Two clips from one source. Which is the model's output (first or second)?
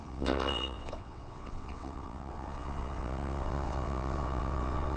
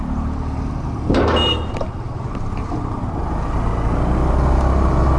first